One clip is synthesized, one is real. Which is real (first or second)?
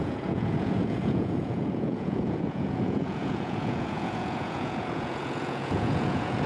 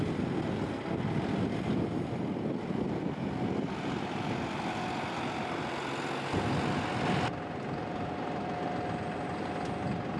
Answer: second